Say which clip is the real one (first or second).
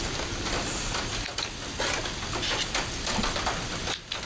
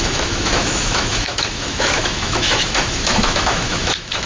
first